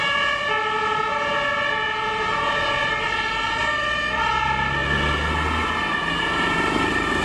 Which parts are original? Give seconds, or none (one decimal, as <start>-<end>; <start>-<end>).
1.1-2.7; 4.8-6.2

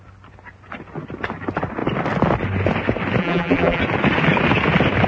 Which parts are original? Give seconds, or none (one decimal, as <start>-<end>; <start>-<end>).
0.0-3.2; 3.8-5.1

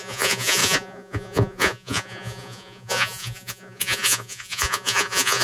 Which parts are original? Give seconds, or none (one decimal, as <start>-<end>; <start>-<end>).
none

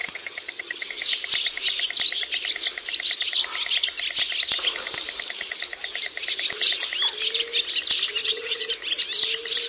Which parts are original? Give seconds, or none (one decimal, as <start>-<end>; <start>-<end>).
0.9-8.2; 8.7-9.7

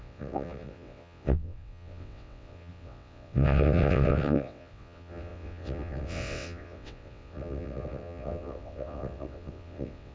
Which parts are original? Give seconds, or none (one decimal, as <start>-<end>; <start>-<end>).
none